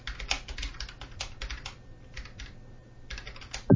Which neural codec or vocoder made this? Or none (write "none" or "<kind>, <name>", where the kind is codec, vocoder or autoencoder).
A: none